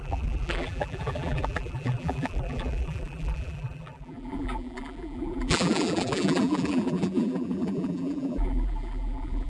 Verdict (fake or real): fake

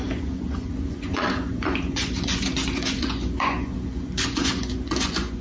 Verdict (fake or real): fake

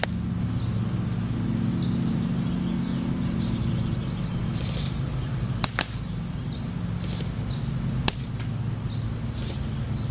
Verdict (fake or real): real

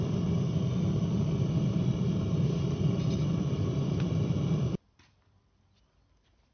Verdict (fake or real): fake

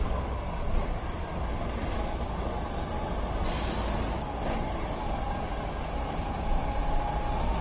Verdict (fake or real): real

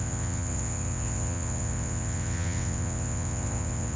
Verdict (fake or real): fake